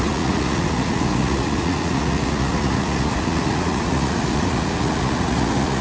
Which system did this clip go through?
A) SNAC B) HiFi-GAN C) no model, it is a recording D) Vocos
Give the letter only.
D